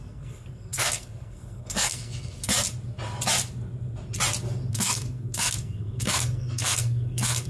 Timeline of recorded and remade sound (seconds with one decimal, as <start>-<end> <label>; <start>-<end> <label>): 0.0-2.5 remade; 2.5-4.7 recorded; 4.7-7.5 remade